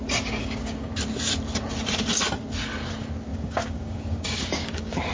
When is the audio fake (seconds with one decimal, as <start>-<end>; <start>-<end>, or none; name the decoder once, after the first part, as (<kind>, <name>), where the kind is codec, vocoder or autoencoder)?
0.4-0.9 (codec, DAC); 3.3-5.1